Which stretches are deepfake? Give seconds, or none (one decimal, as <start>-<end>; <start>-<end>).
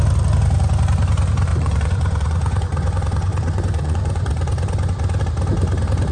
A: 1.5-5.2